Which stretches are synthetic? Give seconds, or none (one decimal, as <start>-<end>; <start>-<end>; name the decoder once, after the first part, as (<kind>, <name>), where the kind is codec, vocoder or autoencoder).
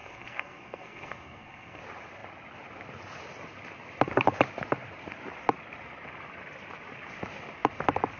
0.0-1.8 (codec, SNAC)